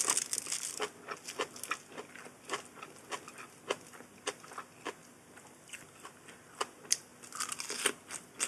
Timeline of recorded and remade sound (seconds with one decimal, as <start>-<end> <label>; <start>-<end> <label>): 0.0-8.5 recorded